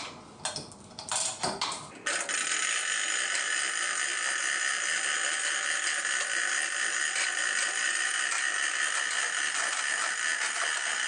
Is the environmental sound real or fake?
real